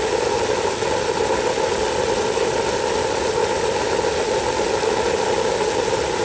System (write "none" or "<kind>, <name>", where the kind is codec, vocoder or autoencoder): none